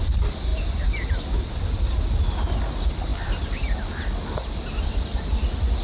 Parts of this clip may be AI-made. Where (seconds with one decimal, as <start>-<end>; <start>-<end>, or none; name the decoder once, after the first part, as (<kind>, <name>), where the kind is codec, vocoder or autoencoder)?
none